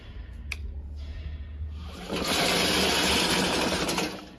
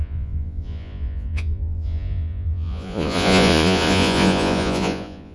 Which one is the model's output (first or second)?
second